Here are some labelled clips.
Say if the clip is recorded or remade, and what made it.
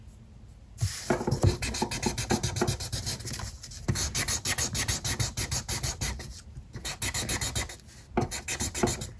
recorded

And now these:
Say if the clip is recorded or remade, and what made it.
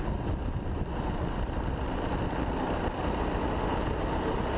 recorded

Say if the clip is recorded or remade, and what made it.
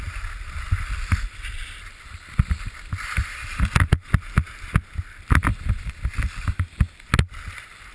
recorded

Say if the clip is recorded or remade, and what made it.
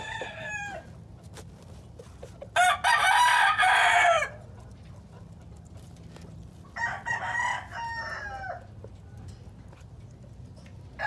recorded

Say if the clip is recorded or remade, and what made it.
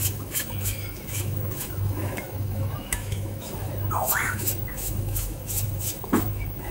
remade, autoencoder, DAC-VAE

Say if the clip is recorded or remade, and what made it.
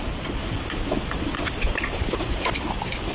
recorded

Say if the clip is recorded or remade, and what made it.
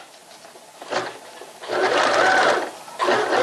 recorded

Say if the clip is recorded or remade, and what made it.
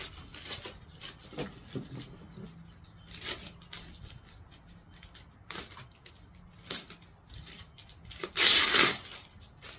recorded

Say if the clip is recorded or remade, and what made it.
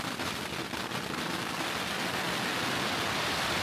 recorded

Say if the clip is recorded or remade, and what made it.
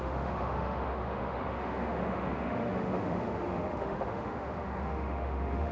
remade, autoencoder, DAC-VAE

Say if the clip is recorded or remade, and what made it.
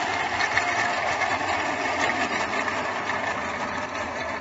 recorded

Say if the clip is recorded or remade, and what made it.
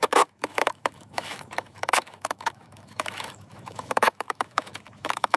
remade, autoencoder, DAC-VAE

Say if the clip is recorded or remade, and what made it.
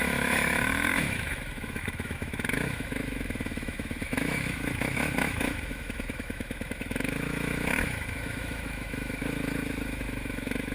remade, autoencoder, DAC-VAE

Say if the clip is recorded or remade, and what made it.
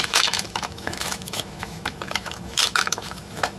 remade, autoencoder, DAC-VAE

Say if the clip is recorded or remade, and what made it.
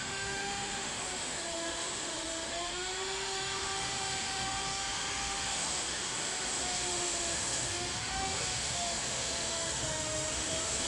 remade, autoencoder, DAC-VAE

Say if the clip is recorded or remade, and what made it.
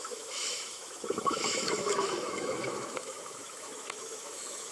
remade, autoencoder, DAC-VAE